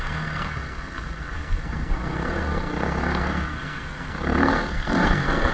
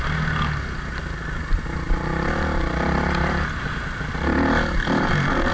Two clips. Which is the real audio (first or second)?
second